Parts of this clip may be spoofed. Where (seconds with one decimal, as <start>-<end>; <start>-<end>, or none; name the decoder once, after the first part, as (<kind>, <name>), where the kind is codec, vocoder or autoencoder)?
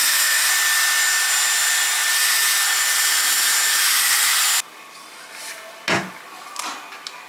0.0-0.5 (codec, SNAC)